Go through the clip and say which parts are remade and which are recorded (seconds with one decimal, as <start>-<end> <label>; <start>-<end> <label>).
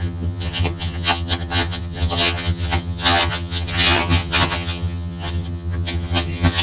0.0-6.6 remade